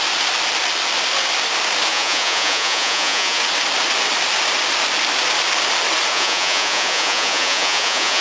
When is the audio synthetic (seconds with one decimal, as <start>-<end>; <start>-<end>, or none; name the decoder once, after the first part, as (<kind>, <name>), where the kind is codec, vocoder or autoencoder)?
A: 1.9-3.4 (vocoder, Vocos); 6.1-8.2